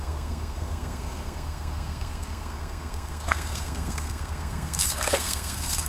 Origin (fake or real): fake